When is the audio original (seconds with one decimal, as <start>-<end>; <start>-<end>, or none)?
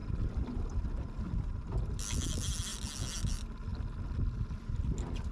0.0-5.3